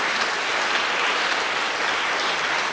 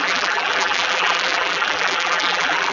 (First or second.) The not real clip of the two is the second